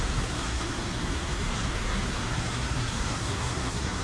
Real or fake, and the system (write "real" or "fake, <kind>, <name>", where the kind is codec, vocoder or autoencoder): fake, codec, SNAC